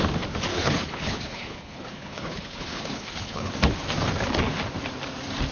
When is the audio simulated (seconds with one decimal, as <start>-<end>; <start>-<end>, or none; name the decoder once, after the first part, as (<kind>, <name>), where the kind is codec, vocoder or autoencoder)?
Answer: 0.5-3.5 (codec, HILCodec)